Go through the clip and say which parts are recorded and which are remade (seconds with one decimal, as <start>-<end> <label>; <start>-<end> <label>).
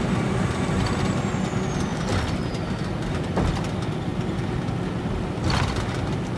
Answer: 0.0-6.4 recorded